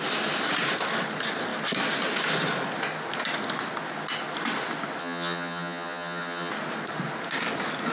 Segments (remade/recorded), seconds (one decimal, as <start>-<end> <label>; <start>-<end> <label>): 0.0-5.0 recorded; 5.0-6.5 remade; 6.5-7.9 recorded